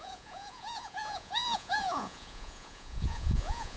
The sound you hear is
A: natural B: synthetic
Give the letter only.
B